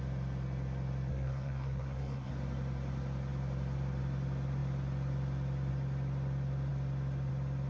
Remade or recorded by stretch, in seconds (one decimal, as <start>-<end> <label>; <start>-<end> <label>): 0.0-1.1 recorded; 1.1-2.3 remade; 2.3-7.7 recorded